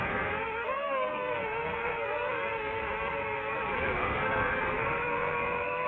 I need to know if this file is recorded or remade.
remade